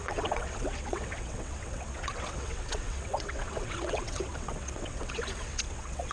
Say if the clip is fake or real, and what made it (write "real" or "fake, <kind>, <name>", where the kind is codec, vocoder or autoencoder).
fake, vocoder, WaveNeXt